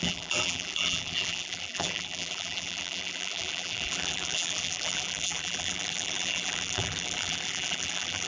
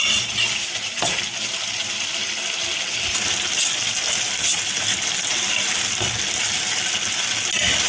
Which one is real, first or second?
second